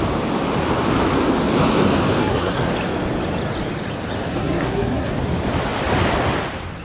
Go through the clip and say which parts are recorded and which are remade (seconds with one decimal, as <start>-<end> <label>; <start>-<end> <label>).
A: 0.0-2.2 recorded; 2.2-2.7 remade; 2.7-4.3 recorded; 4.3-5.1 remade; 5.1-6.8 recorded